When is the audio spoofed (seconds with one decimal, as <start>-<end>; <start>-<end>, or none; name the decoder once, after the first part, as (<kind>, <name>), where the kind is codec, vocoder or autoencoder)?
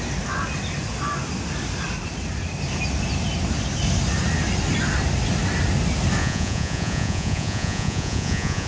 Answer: 6.2-8.7 (vocoder, Vocos)